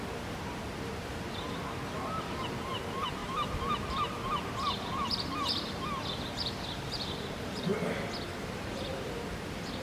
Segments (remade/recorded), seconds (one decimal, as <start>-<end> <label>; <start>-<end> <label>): 0.0-7.7 remade; 7.7-8.3 recorded; 8.3-9.8 remade